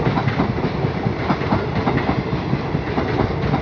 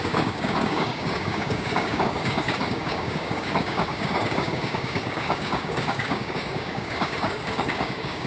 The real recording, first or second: first